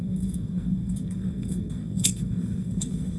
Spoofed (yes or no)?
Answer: yes